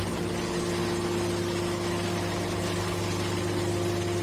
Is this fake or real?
real